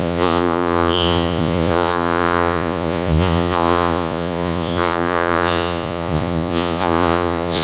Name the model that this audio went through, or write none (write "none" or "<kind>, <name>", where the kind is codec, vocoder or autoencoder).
vocoder, Vocos